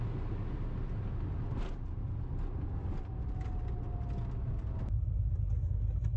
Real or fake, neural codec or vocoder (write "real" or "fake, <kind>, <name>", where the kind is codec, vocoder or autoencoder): real